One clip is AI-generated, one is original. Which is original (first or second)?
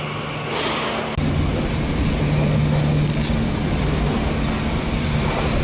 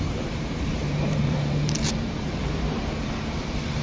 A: first